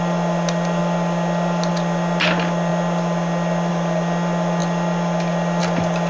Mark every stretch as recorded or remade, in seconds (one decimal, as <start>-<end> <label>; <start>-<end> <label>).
0.0-6.1 recorded